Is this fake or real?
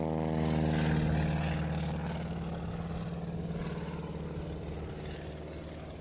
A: real